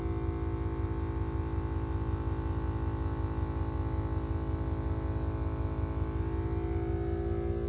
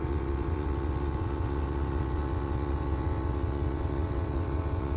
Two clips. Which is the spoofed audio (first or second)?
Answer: second